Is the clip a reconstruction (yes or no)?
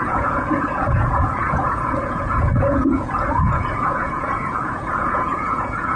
yes